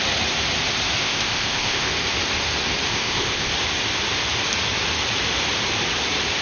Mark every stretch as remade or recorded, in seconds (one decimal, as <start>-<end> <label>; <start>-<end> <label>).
0.0-1.0 recorded; 1.0-1.9 remade; 1.9-2.9 recorded; 2.9-3.5 remade; 3.5-6.4 recorded